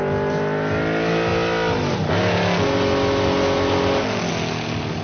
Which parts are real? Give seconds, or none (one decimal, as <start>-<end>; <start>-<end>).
0.0-5.0